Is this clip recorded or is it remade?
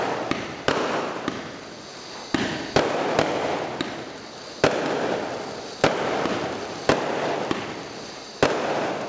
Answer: recorded